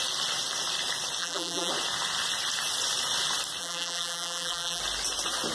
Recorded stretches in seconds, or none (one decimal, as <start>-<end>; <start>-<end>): 0.0-1.2; 1.7-3.6; 4.8-5.5